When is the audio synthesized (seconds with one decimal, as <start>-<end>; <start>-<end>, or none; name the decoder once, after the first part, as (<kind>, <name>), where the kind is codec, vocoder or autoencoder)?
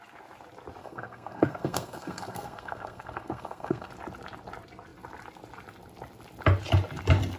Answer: 0.8-3.9 (codec, SNAC)